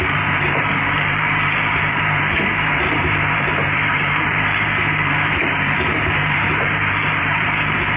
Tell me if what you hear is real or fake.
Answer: fake